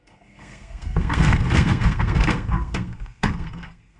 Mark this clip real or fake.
fake